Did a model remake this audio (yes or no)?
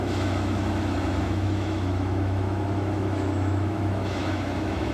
yes